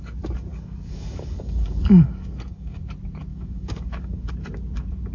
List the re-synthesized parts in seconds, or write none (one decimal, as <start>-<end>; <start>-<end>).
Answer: 0.5-2.8; 3.3-4.3